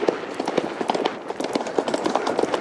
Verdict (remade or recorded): recorded